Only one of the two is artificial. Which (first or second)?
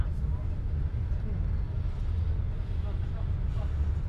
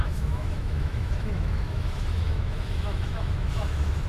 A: second